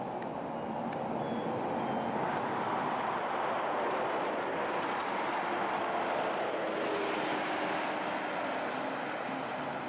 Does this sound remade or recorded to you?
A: recorded